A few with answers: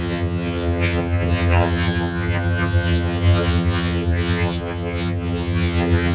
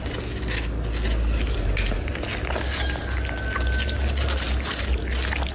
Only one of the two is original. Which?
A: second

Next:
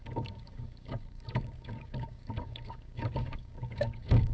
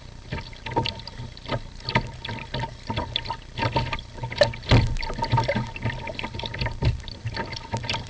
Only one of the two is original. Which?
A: second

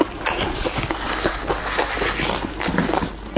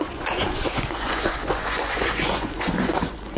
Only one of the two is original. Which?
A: first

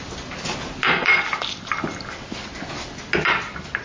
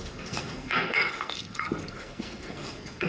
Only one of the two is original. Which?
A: first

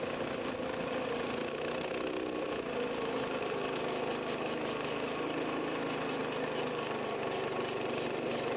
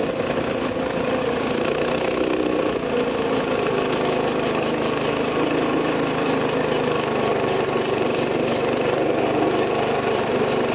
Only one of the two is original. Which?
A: first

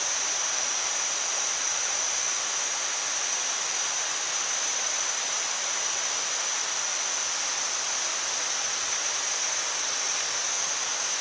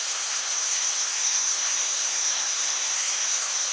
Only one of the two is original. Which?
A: first